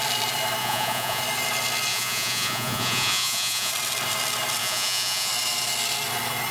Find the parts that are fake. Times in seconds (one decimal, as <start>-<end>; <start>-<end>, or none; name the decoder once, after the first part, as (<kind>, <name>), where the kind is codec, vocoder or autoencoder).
0.6-1.2 (vocoder, Vocos); 1.9-3.7; 4.6-5.3